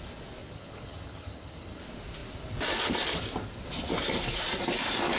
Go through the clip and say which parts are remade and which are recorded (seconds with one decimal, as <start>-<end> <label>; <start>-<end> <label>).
0.0-0.4 recorded; 0.4-1.8 remade; 1.8-5.2 recorded

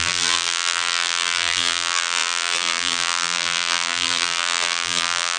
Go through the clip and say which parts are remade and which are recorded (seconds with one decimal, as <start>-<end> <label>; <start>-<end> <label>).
0.0-5.4 remade

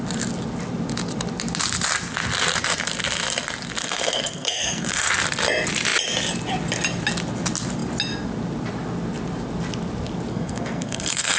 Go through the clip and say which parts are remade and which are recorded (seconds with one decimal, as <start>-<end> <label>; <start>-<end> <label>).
0.0-3.8 recorded; 3.8-5.1 remade; 5.1-10.3 recorded; 10.3-11.4 remade

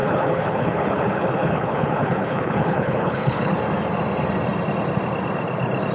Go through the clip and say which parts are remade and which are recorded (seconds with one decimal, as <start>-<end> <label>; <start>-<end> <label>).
0.0-3.5 remade; 3.5-5.9 recorded